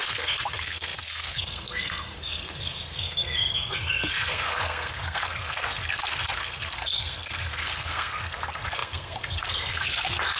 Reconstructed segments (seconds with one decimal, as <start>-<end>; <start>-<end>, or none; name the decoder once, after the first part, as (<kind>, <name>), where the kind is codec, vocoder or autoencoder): 0.0-10.4 (codec, SNAC)